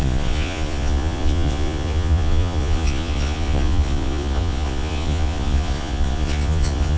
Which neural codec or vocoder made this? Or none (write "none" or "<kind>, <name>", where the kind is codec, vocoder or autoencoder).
vocoder, Vocos